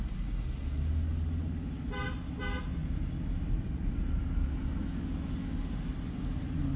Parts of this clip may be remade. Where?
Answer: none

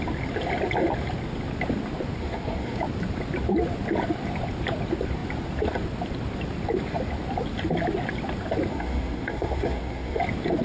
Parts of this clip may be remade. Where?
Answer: 2.2-2.8 (codec, SNAC); 8.7-10.2

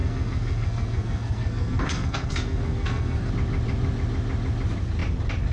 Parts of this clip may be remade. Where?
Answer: 0.0-3.3 (codec, SNAC)

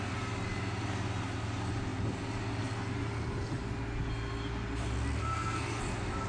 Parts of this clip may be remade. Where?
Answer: 5.2-5.8 (codec, SNAC)

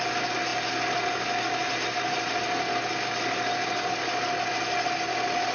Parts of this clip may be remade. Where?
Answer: none

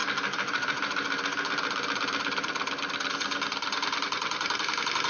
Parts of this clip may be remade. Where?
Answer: none